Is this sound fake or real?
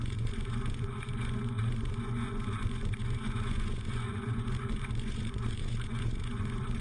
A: fake